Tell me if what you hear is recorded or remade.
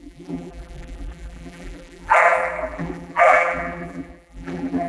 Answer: remade